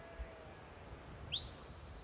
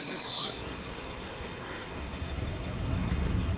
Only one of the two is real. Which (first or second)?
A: first